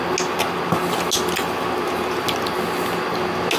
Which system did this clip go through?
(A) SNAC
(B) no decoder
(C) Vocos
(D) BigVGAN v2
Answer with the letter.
B